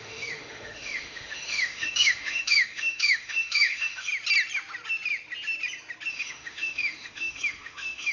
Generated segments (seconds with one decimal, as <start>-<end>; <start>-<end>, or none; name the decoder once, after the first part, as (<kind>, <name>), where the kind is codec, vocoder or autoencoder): 0.0-4.1 (autoencoder, DAC-VAE); 6.1-8.1